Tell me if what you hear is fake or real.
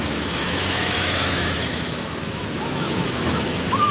fake